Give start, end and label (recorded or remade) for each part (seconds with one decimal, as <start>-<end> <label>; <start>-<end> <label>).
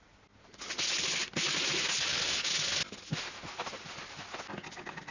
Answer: 0.0-5.1 recorded